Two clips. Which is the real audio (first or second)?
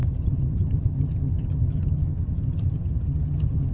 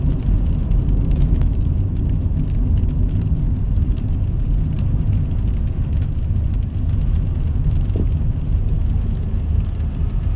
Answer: second